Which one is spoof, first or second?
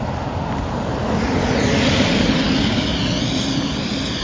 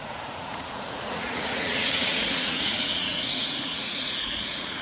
second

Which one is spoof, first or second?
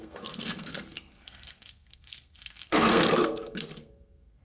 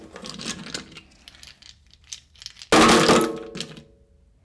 first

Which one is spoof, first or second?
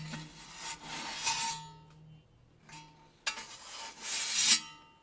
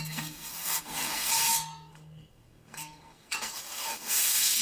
second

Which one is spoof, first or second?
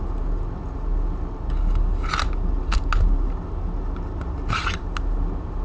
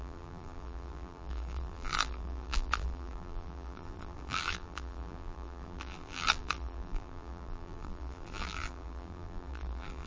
second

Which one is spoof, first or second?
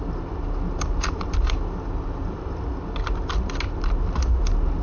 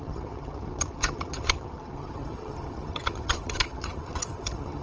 second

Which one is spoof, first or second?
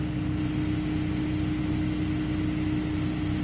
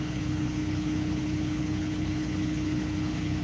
second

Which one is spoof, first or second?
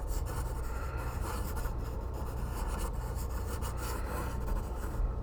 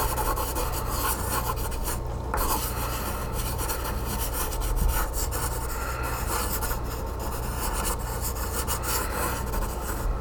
first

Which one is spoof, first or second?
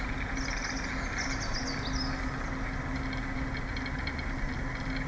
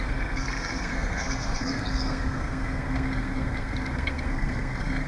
second